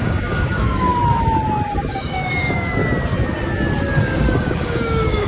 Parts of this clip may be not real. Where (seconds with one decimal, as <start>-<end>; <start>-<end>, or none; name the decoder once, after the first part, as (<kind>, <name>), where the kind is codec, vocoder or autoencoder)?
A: 0.0-0.9 (codec, DAC); 1.9-2.8; 4.0-5.3